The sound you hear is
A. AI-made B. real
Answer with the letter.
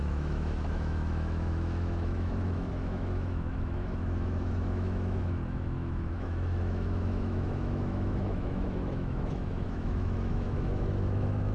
A